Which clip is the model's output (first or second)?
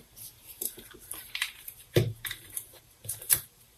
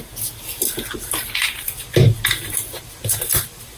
first